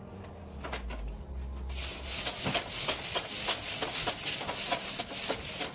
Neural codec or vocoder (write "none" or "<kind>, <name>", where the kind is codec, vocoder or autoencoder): none